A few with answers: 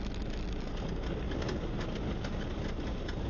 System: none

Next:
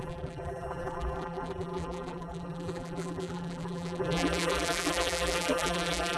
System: vocoder, BigVGAN v2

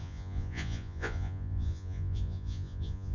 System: vocoder, Vocos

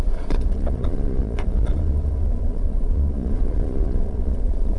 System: vocoder, Vocos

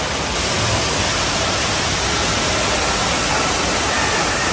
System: none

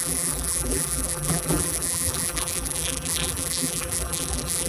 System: vocoder, BigVGAN v2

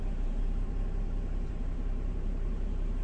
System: vocoder, BigVGAN v2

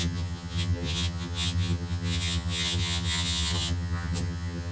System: vocoder, HiFi-GAN